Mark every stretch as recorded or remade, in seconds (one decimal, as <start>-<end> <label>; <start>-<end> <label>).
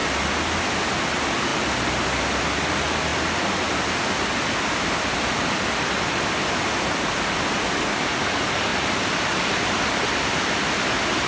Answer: 0.0-11.3 recorded